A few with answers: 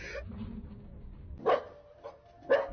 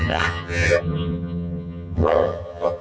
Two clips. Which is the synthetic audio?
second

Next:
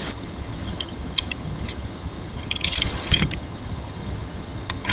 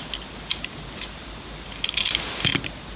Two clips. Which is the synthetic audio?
first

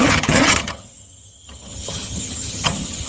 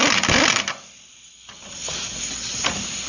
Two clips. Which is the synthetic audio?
first